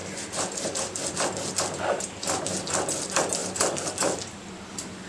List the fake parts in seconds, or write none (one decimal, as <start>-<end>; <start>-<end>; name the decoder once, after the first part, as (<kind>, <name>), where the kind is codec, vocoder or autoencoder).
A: none